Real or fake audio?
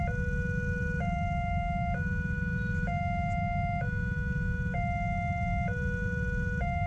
real